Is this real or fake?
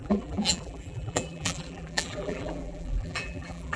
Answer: fake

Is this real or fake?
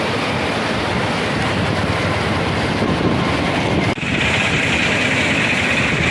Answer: real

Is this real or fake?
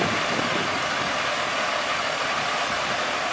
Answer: real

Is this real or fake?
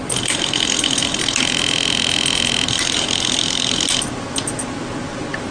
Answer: real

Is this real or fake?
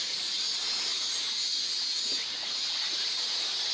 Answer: real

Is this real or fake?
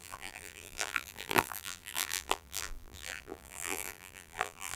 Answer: fake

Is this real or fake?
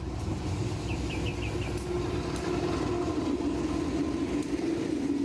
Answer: real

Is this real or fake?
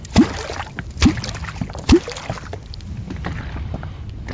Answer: real